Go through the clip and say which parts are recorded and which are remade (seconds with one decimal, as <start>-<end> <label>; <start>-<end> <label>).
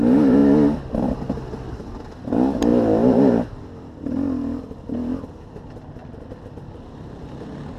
0.0-7.8 recorded